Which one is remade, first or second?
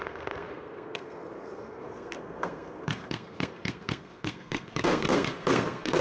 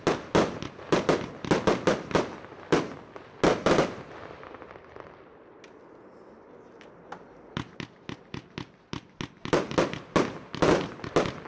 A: first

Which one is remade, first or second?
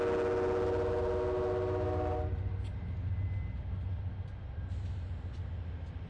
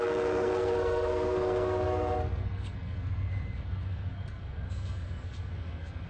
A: second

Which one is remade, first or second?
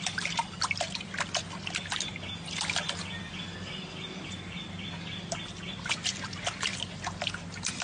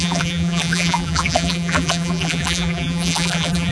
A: second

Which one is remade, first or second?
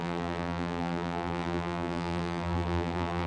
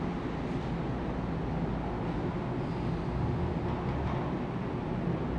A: first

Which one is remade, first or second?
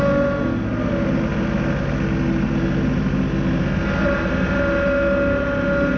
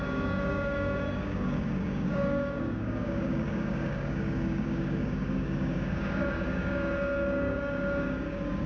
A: second